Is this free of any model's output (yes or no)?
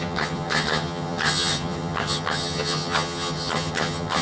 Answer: no